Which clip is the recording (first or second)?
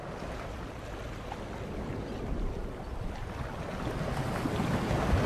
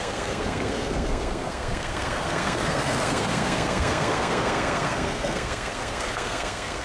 first